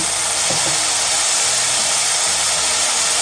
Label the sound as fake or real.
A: real